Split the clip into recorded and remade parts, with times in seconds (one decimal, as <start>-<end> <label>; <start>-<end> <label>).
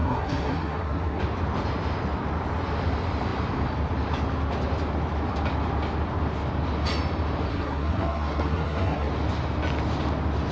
0.0-1.2 remade; 1.2-7.5 recorded; 7.5-9.1 remade; 9.1-10.5 recorded